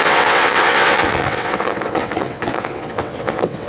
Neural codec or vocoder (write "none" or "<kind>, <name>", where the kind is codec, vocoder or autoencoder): vocoder, WaveNeXt